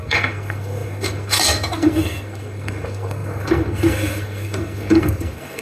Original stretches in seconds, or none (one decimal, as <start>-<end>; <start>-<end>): none